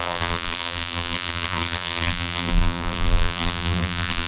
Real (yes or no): no